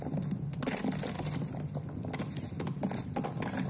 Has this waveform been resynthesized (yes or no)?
no